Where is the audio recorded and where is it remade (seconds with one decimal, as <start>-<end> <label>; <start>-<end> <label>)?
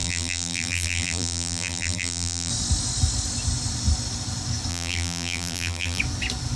0.0-2.5 remade; 2.5-4.7 recorded; 4.7-6.0 remade; 6.0-6.6 recorded